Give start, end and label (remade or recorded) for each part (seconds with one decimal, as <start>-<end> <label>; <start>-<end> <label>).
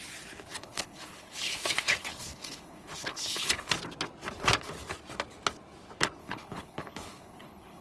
0.0-0.5 recorded; 0.5-3.7 remade; 3.7-6.2 recorded; 6.2-7.8 remade